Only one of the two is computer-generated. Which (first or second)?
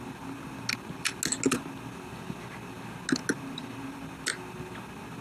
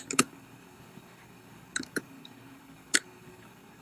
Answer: second